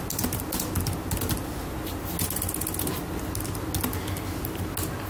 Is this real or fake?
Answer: real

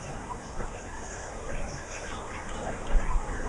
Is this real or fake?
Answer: fake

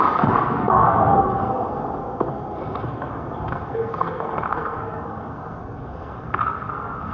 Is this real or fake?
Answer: fake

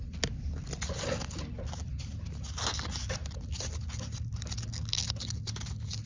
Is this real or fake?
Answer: real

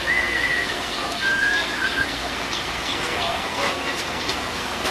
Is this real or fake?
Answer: fake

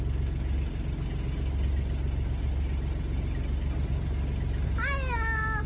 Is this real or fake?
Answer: real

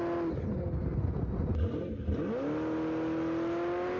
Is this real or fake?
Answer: real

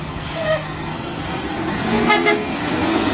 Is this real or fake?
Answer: fake